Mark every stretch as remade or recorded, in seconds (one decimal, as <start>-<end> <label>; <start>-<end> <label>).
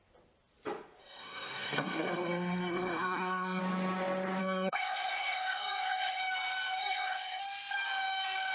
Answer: 0.0-1.0 recorded; 1.0-3.6 remade; 3.6-4.4 recorded; 4.4-6.2 remade; 6.2-6.8 recorded; 6.8-7.4 remade; 7.4-8.5 recorded